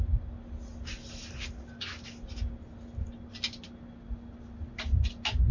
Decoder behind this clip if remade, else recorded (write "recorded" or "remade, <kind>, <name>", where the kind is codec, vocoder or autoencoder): recorded